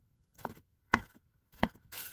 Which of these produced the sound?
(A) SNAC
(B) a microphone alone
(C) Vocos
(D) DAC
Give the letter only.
A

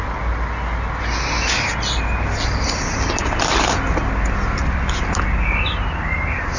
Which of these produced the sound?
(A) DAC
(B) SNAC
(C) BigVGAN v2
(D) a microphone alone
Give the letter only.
D